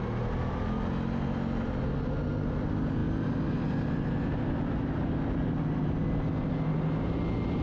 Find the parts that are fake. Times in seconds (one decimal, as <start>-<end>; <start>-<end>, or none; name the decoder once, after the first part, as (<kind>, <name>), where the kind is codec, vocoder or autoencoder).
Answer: none